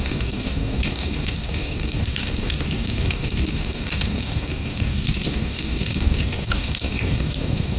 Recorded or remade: remade